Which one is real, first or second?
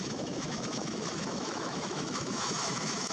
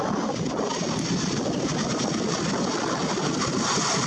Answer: second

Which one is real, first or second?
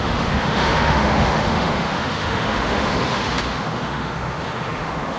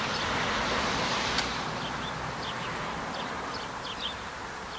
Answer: second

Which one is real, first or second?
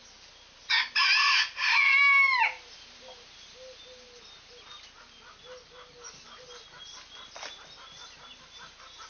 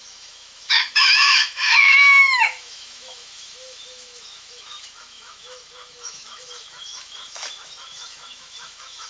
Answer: first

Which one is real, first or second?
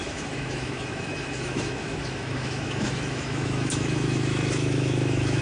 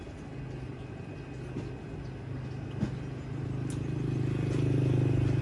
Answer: second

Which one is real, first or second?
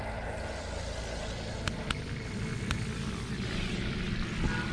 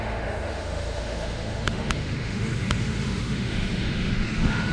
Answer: first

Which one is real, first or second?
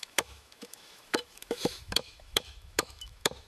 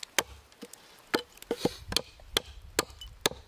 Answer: second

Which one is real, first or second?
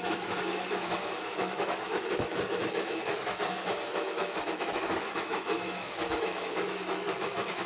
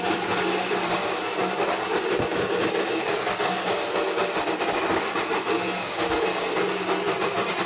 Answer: second